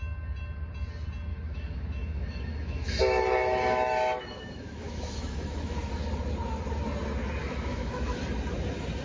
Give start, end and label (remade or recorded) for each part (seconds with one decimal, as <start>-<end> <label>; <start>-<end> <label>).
0.0-1.3 recorded; 1.3-5.9 remade; 5.9-7.4 recorded; 7.4-8.2 remade; 8.2-9.0 recorded